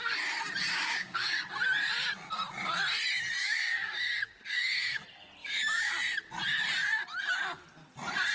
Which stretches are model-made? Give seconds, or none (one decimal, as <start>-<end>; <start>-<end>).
0.7-1.5; 3.4-5.0; 5.4-5.9